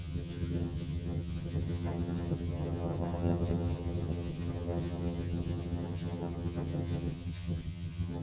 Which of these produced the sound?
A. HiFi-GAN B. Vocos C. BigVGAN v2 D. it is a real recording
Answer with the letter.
A